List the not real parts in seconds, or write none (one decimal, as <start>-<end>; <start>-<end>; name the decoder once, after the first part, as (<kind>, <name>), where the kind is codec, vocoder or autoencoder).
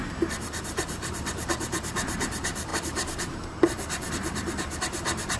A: 0.0-5.4 (vocoder, BigVGAN v2)